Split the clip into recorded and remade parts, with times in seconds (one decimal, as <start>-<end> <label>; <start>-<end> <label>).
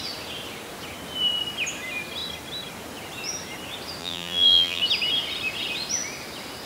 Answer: 0.0-4.0 recorded; 4.0-4.8 remade; 4.8-6.7 recorded